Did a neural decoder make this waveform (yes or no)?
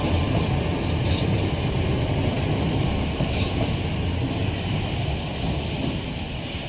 no